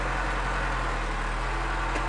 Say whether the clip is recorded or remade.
recorded